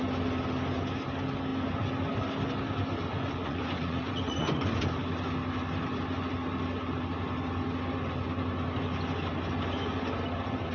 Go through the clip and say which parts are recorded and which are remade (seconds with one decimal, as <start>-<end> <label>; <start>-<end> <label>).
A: 0.0-3.1 recorded; 3.1-4.8 remade; 4.8-10.7 recorded